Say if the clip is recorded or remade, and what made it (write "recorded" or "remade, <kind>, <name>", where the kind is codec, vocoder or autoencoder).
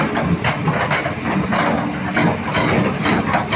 recorded